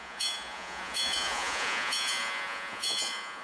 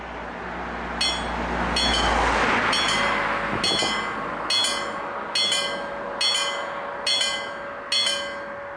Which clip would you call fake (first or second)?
first